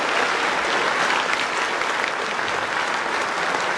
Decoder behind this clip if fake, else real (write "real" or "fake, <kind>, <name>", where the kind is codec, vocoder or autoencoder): real